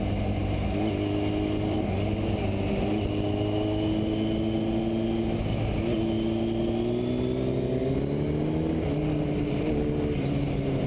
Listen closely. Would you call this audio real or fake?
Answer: real